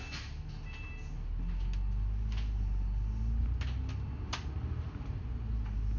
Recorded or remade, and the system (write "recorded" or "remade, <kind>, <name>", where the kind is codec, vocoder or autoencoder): recorded